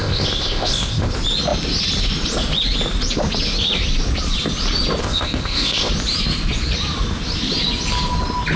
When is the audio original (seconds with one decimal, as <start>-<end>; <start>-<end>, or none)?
1.1-5.0; 5.9-8.6

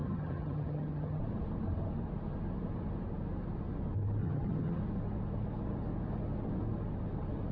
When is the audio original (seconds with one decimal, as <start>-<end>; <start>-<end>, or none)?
1.2-4.2; 4.8-7.5

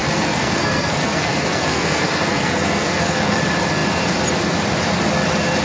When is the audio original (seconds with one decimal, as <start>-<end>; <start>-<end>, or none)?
3.4-5.6

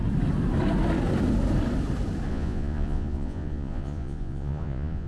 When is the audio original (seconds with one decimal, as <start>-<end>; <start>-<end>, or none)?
0.0-2.3

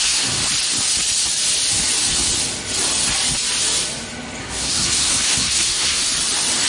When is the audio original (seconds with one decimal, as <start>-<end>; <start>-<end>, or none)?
0.4-4.4; 6.0-6.7

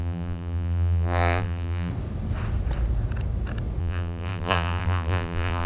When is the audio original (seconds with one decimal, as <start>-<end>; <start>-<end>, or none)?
1.9-3.8

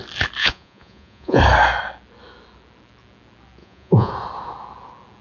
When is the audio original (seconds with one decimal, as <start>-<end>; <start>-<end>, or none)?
0.0-0.4; 1.4-3.6; 4.1-5.2